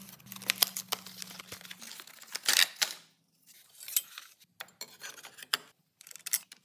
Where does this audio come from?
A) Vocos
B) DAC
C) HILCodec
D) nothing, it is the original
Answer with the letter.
D